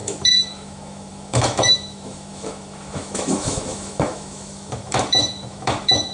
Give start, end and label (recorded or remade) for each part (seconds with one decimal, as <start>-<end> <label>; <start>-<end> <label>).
0.0-6.1 remade